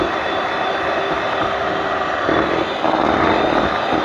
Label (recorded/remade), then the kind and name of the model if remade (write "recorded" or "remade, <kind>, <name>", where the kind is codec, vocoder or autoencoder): recorded